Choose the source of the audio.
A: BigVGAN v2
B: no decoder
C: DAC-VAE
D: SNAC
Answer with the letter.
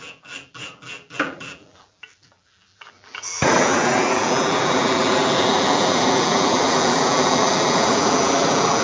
A